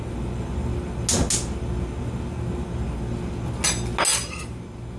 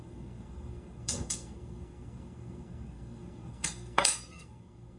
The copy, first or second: second